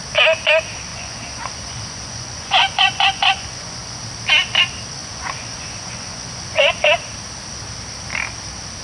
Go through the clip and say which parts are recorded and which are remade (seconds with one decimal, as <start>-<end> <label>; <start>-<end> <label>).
0.0-0.9 recorded; 0.9-4.0 remade; 4.0-5.0 recorded; 5.0-6.7 remade; 6.7-8.8 recorded